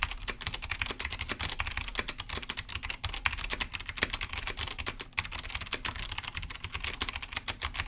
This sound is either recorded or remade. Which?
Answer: recorded